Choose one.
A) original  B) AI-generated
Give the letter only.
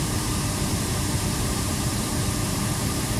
B